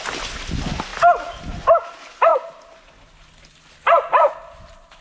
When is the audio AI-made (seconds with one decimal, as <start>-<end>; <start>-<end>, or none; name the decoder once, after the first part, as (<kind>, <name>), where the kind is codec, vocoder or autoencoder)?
none